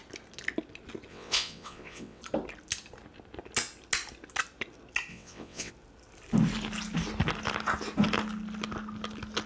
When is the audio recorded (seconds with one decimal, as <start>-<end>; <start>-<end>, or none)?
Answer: 0.0-1.1; 2.2-5.1; 5.7-9.5